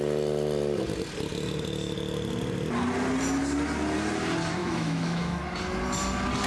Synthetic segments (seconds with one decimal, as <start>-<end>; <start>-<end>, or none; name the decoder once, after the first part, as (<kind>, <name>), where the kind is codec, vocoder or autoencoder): 4.6-5.4 (autoencoder, DAC-VAE)